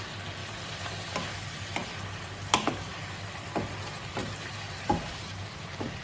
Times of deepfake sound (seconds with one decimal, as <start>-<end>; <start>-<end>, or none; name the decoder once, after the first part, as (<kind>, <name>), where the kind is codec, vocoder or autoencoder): 0.4-1.1 (vocoder, BigVGAN v2); 4.2-6.0